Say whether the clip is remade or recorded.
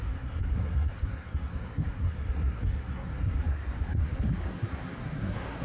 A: remade